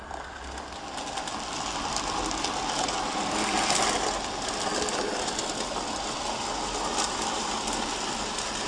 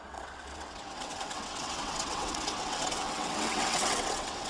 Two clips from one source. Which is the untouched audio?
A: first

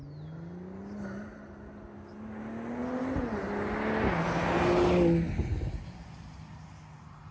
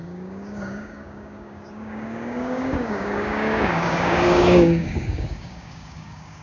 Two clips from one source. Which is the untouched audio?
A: first